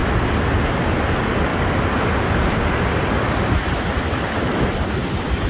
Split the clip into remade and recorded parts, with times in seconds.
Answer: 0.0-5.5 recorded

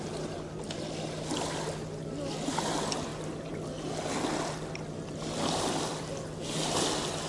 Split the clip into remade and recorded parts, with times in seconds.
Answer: 0.0-7.3 recorded

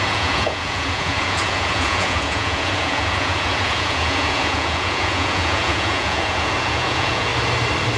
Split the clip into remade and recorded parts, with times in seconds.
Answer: 0.0-7.3 remade; 7.3-8.0 recorded

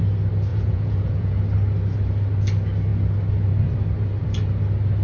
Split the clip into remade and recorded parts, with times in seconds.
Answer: 0.0-0.5 recorded; 0.5-1.4 remade; 1.4-5.0 recorded

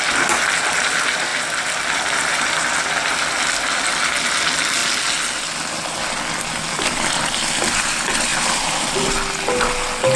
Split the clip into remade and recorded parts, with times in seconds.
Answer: 0.0-10.2 recorded